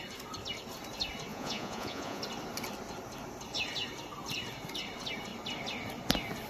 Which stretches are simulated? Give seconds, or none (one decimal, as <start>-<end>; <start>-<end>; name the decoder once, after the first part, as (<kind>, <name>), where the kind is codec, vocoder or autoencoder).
1.3-2.2 (vocoder, Vocos)